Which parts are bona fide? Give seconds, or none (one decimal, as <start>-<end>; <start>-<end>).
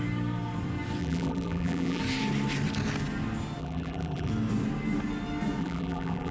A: 0.0-1.0; 2.0-3.6; 4.3-5.6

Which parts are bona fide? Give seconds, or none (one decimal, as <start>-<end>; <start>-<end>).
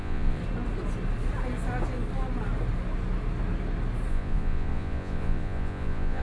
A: 0.4-4.1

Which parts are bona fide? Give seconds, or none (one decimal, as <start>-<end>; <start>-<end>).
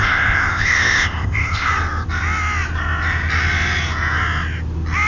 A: 1.7-5.1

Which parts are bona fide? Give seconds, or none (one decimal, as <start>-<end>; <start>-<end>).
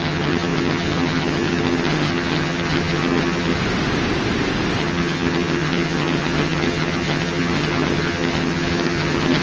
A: 3.6-4.8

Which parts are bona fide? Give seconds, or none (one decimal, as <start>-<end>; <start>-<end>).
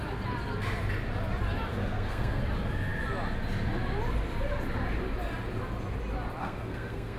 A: 0.0-1.7; 2.4-6.4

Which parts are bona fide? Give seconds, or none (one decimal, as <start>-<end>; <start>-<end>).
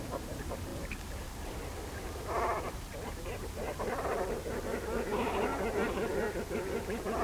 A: 5.5-6.4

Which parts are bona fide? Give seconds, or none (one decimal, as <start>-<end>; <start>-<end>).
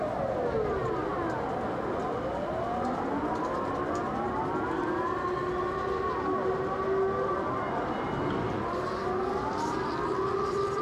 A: 0.0-10.8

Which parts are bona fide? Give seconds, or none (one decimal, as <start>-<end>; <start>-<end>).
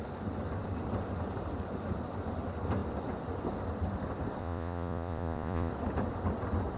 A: 0.0-4.4; 5.7-6.8